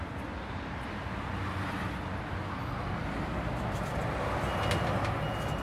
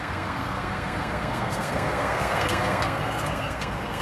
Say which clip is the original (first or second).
first